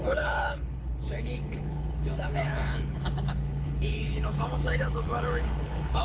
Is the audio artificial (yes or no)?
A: yes